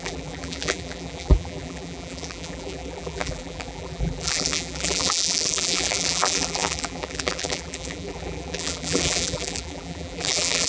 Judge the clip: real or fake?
fake